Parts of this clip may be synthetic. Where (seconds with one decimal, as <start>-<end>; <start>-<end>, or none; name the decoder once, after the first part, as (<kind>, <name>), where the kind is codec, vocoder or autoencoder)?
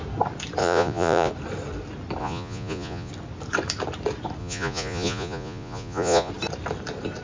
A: 0.6-1.3 (vocoder, Vocos); 2.2-3.1; 4.4-6.3